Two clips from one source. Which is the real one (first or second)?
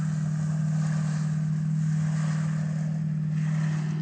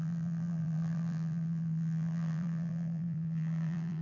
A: first